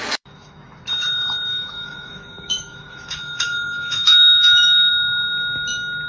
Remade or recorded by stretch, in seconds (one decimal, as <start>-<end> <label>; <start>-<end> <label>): 0.0-0.8 remade; 0.8-1.5 recorded; 1.5-4.9 remade; 4.9-6.1 recorded